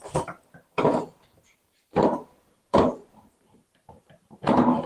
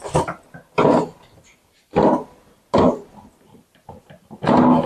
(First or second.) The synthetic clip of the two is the first